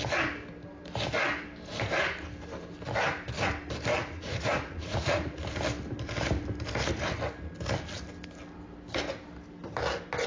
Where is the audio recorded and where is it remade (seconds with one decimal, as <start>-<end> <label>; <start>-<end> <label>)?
0.0-4.0 recorded; 4.0-5.4 remade; 5.4-10.3 recorded